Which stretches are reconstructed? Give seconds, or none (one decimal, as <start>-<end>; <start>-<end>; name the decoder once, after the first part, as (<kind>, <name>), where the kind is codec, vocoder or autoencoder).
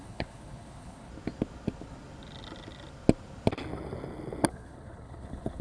0.0-1.1 (codec, HILCodec); 4.5-5.6